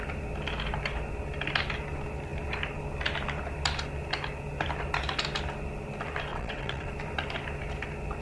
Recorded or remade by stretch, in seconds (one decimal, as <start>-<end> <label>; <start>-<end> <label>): 0.0-6.3 recorded; 6.3-6.9 remade; 6.9-8.2 recorded